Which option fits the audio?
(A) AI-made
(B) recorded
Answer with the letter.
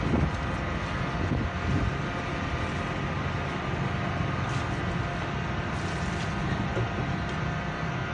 B